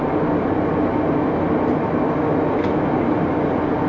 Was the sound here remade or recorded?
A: recorded